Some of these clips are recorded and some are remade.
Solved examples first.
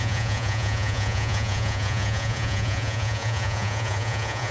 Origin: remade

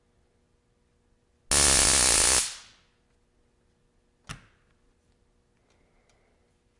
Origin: recorded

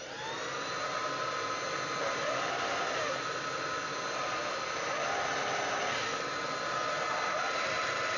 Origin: recorded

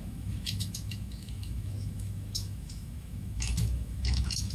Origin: remade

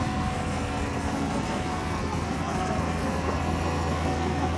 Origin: remade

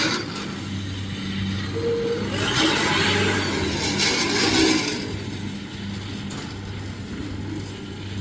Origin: recorded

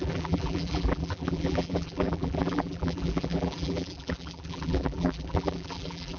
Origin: remade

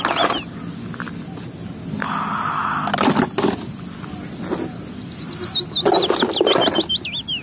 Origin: recorded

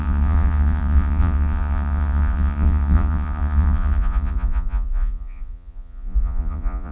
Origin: remade